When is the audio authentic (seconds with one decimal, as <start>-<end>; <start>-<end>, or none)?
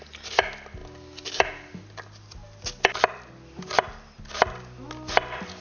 0.0-5.6